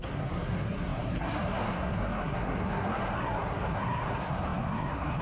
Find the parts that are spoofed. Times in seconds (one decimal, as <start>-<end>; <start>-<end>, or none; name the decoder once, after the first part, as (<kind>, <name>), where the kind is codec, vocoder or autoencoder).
0.0-5.2 (codec, SNAC)